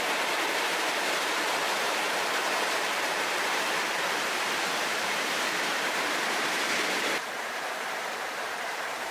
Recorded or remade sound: remade